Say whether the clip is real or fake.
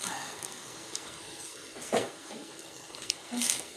fake